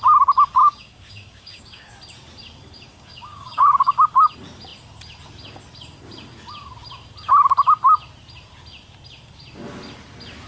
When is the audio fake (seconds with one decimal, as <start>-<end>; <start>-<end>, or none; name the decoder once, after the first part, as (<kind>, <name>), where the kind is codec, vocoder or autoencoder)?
0.6-1.9 (codec, DAC); 2.9-3.9